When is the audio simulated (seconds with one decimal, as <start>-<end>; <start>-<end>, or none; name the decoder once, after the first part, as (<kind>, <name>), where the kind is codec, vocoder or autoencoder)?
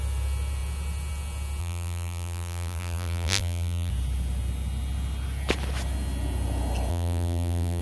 1.6-3.9 (vocoder, BigVGAN v2); 6.9-7.8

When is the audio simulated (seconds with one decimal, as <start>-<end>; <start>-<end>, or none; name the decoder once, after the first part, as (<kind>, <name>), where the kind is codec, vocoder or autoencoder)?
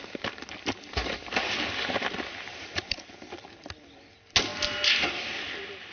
2.5-3.1 (vocoder, BigVGAN v2)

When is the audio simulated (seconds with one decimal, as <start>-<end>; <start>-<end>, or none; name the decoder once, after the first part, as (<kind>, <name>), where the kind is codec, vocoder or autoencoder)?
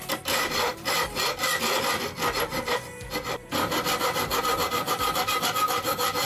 0.0-6.3 (vocoder, BigVGAN v2)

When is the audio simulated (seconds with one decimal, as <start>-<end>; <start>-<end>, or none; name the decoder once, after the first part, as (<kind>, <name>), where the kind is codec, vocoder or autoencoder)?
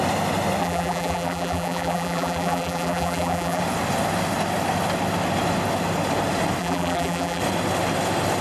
0.6-3.6 (vocoder, BigVGAN v2); 6.6-7.4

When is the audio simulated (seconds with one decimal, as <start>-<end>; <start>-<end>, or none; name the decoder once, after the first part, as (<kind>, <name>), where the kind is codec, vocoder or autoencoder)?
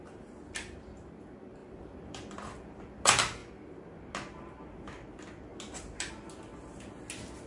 1.6-2.8 (vocoder, BigVGAN v2)